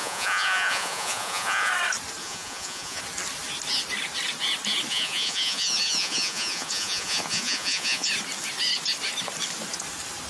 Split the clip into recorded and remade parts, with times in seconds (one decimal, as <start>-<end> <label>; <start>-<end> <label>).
0.0-1.7 remade; 1.7-2.2 recorded; 2.2-3.0 remade; 3.0-4.9 recorded; 4.9-8.1 remade; 8.1-10.3 recorded